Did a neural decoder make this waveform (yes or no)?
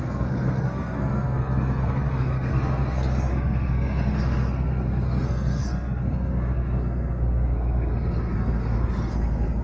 yes